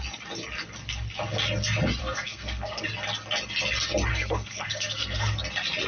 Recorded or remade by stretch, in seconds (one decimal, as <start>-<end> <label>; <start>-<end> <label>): 0.0-2.0 recorded; 2.0-2.8 remade; 2.8-4.1 recorded; 4.1-5.4 remade; 5.4-5.9 recorded